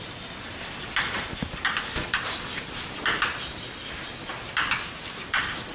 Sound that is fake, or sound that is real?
real